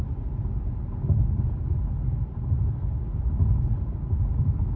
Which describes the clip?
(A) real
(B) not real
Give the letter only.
A